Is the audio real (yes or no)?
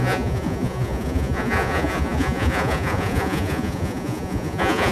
no